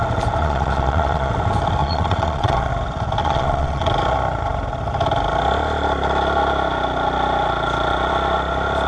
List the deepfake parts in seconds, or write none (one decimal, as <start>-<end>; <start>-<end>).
0.4-1.3; 1.8-2.7; 3.2-3.9